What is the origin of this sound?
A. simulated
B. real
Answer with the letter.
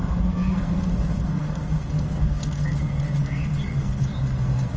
A